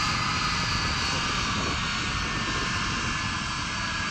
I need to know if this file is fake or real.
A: real